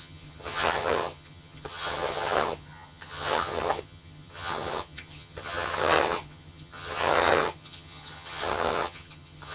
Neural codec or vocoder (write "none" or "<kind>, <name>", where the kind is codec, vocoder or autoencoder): vocoder, HiFi-GAN